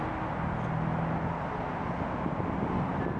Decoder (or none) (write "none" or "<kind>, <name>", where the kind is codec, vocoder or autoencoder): none